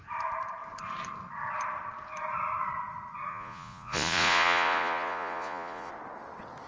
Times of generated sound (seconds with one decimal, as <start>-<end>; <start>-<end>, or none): 3.3-5.9